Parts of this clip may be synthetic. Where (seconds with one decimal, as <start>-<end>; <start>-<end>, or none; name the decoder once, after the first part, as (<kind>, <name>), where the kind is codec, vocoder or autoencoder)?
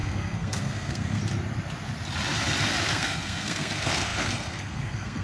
0.0-1.2 (codec, SNAC); 2.8-5.2